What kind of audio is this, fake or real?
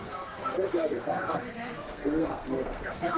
fake